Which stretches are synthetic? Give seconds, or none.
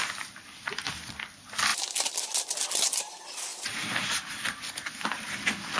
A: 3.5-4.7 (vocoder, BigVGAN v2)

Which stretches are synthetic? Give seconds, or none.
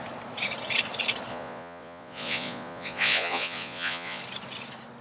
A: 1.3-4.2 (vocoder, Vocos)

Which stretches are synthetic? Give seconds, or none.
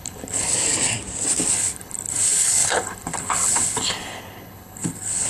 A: 0.0-0.5 (codec, HILCodec); 1.5-5.3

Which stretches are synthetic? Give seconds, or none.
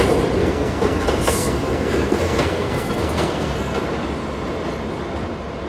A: 0.4-3.8 (codec, SNAC)